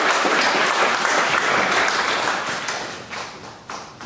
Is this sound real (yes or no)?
yes